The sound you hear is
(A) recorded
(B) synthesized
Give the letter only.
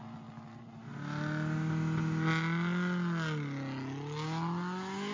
A